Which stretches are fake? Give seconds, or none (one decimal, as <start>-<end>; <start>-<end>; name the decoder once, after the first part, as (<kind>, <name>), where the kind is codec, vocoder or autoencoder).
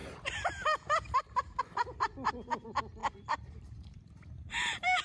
3.0-5.0 (vocoder, BigVGAN v2)